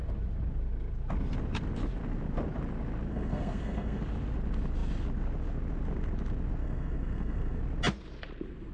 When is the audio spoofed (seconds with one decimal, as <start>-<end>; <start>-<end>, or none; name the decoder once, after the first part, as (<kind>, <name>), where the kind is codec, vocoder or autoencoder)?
3.1-4.0 (codec, SNAC); 6.6-7.6